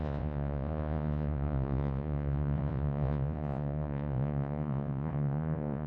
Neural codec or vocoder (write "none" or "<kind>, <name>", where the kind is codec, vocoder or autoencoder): vocoder, Vocos